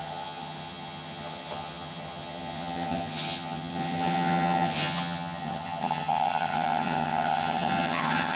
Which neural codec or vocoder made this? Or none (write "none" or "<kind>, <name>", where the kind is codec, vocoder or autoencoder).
vocoder, HiFi-GAN